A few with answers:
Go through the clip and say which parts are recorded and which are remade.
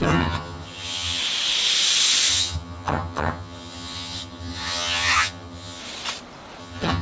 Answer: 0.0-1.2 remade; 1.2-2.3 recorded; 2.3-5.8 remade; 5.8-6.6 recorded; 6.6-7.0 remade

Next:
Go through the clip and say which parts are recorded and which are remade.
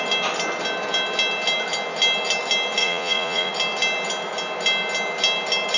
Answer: 0.0-2.8 recorded; 2.8-3.5 remade; 3.5-5.8 recorded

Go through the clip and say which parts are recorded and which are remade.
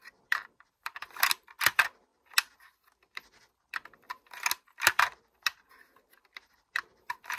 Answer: 0.0-2.1 remade; 2.1-6.5 recorded; 6.5-7.4 remade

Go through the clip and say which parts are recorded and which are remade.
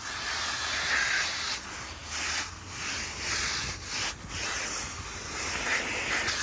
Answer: 0.0-6.4 recorded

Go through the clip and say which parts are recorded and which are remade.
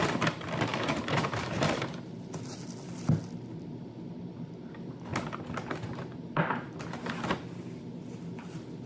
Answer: 0.0-8.9 recorded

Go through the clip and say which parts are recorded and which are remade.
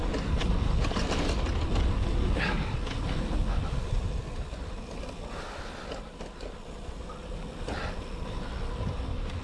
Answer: 0.0-9.4 recorded